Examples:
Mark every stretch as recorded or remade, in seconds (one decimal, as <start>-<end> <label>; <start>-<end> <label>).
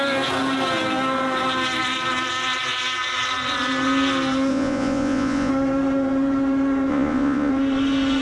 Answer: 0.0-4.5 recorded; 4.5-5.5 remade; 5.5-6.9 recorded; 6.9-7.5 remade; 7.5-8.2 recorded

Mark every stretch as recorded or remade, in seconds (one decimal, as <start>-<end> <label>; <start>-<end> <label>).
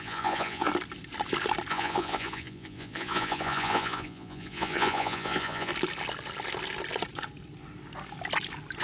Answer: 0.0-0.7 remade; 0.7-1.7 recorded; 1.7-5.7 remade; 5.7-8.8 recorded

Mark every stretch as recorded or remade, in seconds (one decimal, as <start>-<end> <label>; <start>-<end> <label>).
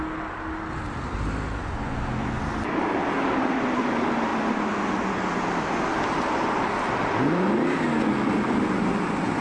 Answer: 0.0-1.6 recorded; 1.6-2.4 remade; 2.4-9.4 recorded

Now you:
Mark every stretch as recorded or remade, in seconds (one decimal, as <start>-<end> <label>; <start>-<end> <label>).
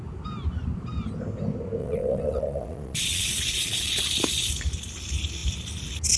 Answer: 0.0-1.8 recorded; 1.8-4.0 remade; 4.0-6.2 recorded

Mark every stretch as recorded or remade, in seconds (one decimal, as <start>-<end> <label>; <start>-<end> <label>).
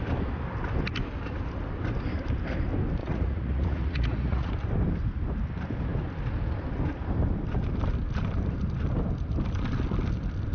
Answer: 0.0-3.0 recorded; 3.0-4.5 remade; 4.5-10.5 recorded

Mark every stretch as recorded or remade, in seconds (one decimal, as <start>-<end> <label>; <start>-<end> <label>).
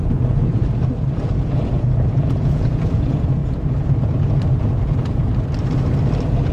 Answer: 0.0-0.6 remade; 0.6-1.2 recorded; 1.2-3.4 remade; 3.4-4.6 recorded; 4.6-5.3 remade; 5.3-6.5 recorded